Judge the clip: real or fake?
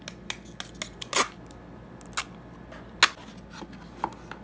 real